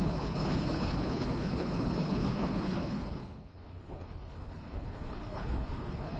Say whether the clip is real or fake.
fake